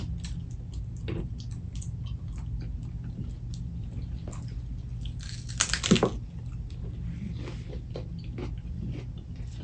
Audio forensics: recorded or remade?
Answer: recorded